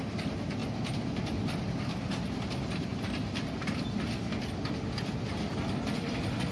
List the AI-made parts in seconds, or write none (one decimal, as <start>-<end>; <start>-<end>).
0.6-2.5